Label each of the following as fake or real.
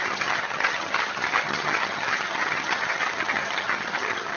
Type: fake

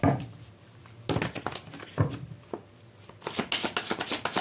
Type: real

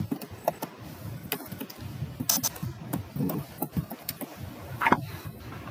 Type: real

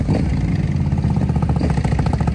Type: real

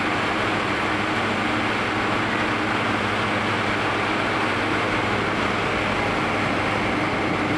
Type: real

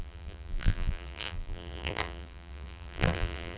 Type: fake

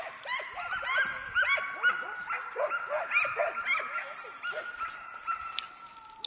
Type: real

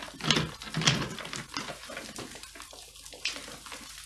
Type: real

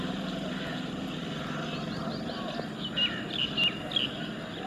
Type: real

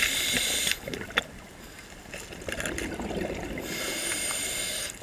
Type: real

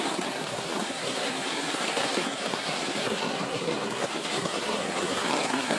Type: fake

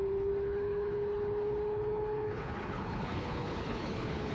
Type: fake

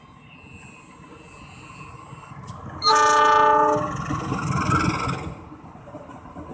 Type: real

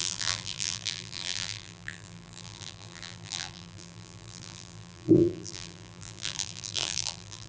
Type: fake